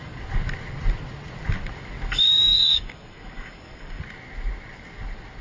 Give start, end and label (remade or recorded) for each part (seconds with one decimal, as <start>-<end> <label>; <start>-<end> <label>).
0.0-2.3 recorded; 2.3-4.0 remade; 4.0-5.4 recorded